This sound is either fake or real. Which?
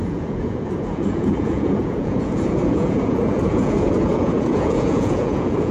fake